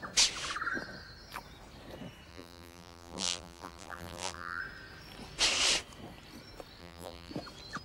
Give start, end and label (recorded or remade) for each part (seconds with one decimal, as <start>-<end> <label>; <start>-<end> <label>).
0.0-2.3 recorded; 2.3-4.6 remade; 4.6-6.8 recorded; 6.8-7.3 remade; 7.3-7.8 recorded